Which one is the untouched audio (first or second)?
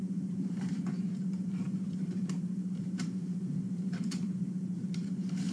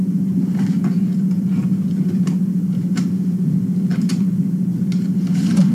second